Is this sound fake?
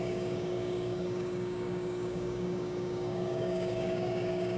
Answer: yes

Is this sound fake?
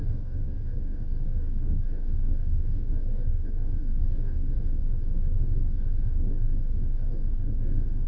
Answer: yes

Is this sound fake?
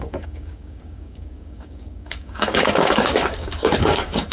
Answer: yes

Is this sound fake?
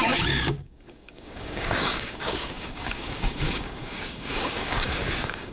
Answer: yes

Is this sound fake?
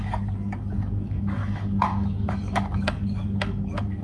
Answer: yes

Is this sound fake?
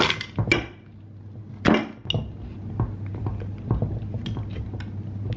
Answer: no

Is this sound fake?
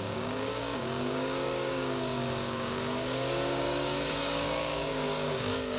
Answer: yes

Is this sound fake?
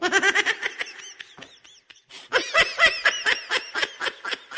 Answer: no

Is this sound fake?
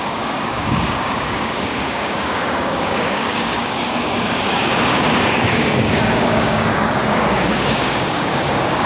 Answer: yes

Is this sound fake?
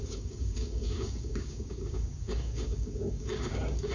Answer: yes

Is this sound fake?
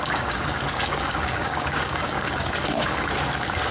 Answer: yes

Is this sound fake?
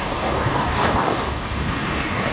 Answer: yes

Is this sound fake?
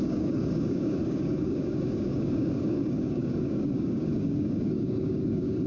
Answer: yes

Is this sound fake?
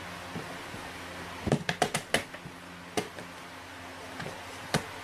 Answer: no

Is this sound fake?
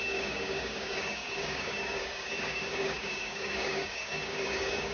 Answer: yes